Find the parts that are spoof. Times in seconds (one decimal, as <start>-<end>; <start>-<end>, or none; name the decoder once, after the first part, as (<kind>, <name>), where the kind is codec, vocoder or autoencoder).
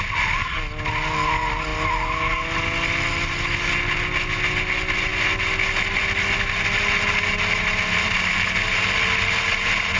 none